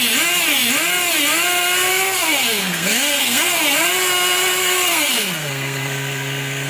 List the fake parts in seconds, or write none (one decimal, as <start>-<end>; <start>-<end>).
1.9-3.5; 4.6-6.7